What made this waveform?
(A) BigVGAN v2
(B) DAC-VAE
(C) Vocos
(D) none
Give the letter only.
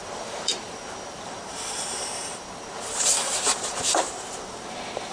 A